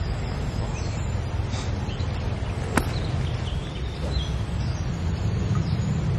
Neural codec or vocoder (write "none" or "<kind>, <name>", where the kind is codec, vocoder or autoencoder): none